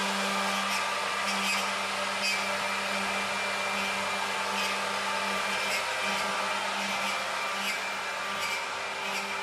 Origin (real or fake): real